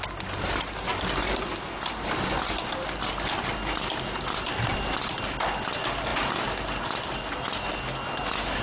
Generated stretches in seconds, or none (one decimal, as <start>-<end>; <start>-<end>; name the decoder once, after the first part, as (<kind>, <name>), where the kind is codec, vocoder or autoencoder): none